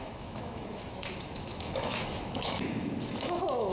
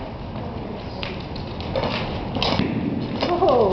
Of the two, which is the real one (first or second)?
second